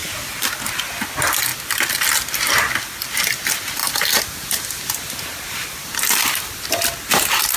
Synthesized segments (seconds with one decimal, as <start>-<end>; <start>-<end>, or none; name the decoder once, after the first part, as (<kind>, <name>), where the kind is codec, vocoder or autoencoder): 0.0-0.9 (vocoder, BigVGAN v2); 3.8-6.7